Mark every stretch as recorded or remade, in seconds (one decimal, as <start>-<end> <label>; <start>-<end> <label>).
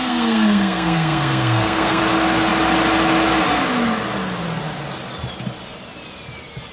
0.0-2.0 remade; 2.0-6.7 recorded